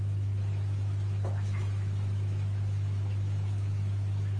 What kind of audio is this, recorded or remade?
remade